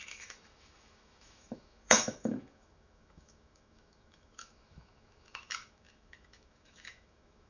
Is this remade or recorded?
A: remade